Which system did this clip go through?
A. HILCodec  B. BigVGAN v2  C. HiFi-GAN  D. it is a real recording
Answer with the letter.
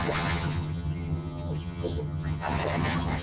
C